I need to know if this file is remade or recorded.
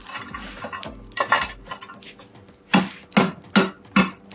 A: recorded